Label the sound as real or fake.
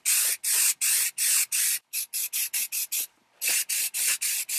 real